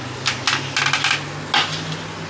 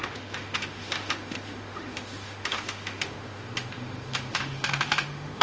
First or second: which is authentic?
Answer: first